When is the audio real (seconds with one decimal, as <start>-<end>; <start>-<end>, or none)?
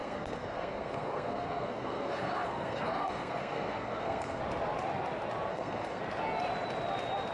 4.4-5.5; 6.0-7.3